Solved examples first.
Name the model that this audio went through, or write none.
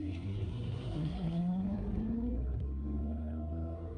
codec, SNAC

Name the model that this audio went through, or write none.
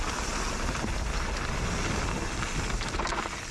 none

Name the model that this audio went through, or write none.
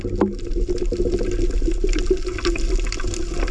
none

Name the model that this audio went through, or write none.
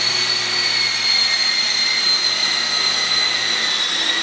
none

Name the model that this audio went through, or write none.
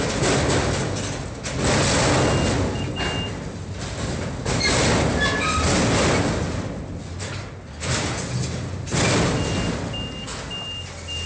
none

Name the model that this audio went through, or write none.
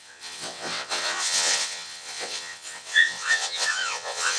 vocoder, WaveNeXt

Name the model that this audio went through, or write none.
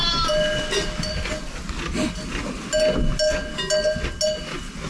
none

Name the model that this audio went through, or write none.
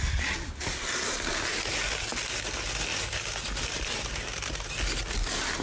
none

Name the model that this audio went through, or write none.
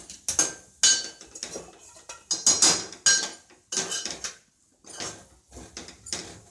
none